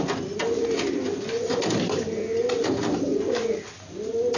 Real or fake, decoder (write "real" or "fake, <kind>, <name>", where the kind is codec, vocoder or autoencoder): real